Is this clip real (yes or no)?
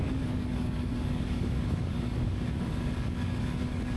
no